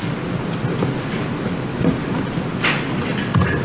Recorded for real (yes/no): yes